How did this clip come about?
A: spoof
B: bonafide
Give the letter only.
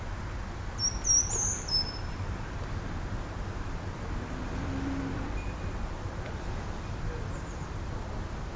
B